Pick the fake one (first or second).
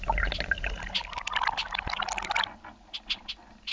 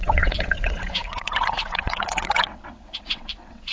second